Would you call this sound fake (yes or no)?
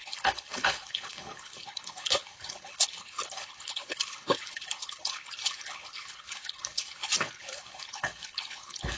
yes